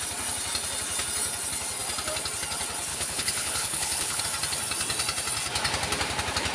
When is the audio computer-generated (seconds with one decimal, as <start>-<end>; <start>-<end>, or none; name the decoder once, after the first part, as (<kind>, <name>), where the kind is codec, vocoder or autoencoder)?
2.9-4.2 (codec, HILCodec)